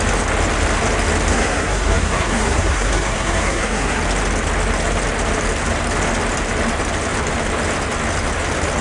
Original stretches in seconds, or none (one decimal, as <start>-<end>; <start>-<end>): 0.0-1.3; 4.0-8.8